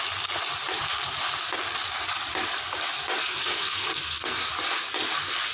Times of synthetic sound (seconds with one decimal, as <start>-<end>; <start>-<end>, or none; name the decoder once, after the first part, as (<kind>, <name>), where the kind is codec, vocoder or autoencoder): 3.2-4.5 (codec, SNAC)